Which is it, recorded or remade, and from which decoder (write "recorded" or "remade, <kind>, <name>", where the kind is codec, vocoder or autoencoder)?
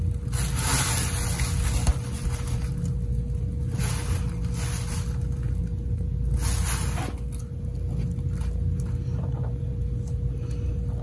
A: recorded